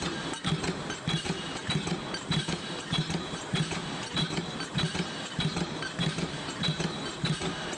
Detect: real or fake fake